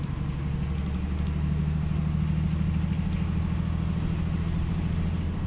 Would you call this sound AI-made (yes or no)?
no